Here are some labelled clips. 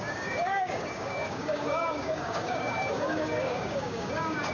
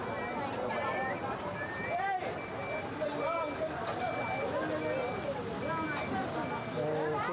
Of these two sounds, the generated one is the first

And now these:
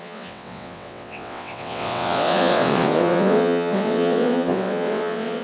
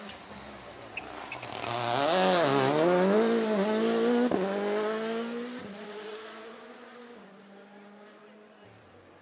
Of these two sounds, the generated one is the first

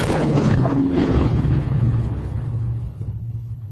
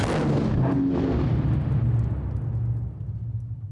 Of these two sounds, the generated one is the first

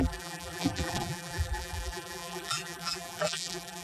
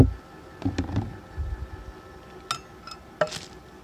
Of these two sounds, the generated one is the first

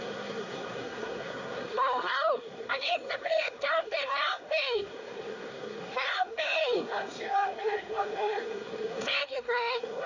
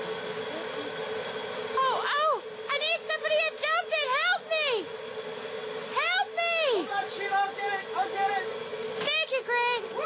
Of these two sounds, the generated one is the first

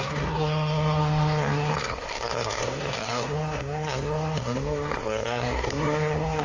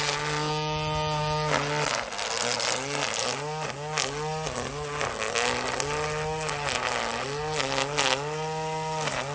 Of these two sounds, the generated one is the first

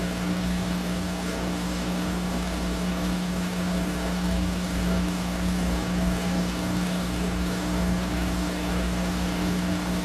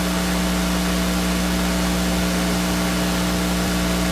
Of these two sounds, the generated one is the first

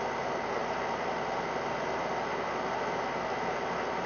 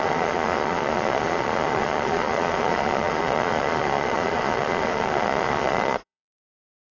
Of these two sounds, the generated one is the second